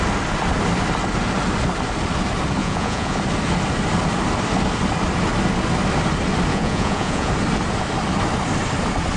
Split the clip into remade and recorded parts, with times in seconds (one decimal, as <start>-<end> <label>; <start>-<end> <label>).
0.0-2.6 recorded; 2.6-3.2 remade; 3.2-6.5 recorded; 6.5-7.3 remade; 7.3-9.2 recorded